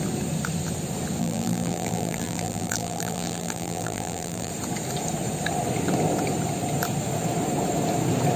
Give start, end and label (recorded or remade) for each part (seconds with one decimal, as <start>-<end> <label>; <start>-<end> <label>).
0.0-1.2 recorded; 1.2-4.5 remade; 4.5-8.4 recorded